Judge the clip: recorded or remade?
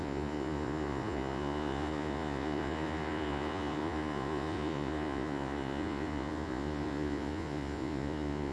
remade